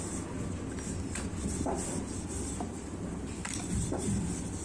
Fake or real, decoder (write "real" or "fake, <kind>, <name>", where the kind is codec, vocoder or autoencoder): real